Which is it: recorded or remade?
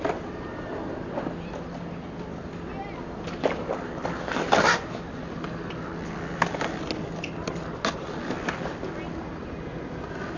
recorded